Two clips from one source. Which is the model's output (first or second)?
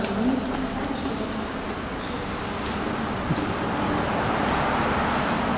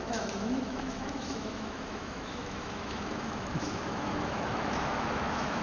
second